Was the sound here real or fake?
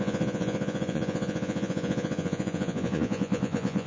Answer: fake